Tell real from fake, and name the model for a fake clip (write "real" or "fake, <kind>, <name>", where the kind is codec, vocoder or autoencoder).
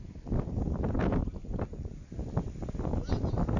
real